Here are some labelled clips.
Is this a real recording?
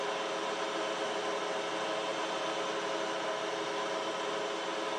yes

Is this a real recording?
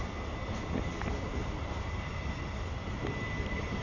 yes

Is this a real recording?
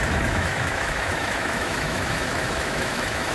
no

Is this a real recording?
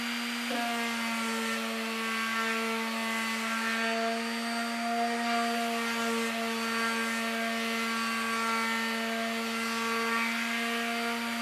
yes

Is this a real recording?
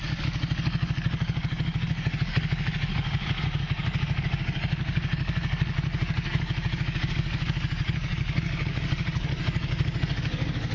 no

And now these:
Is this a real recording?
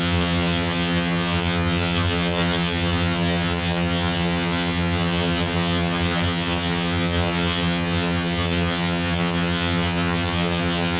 no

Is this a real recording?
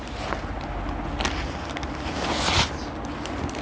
yes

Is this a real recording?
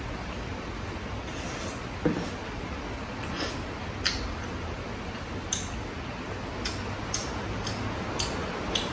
yes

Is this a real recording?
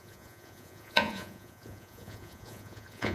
no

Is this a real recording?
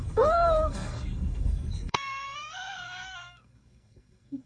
no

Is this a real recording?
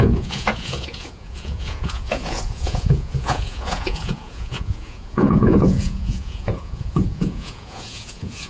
no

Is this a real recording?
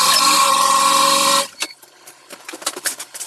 no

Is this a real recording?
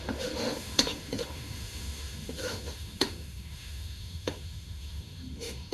no